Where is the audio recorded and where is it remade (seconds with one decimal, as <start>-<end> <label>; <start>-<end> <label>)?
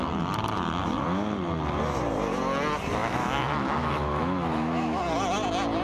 0.0-3.0 recorded; 3.0-5.0 remade; 5.0-5.8 recorded